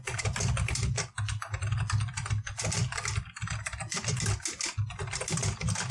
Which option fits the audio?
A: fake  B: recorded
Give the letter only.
B